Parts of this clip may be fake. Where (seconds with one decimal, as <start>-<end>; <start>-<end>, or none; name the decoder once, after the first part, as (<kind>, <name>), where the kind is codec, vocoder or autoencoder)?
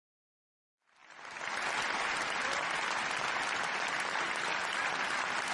none